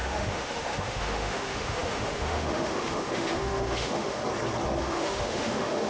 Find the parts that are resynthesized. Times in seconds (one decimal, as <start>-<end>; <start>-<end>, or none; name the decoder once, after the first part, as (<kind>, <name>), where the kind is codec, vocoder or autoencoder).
0.0-4.2 (autoencoder, DAC-VAE); 4.8-5.9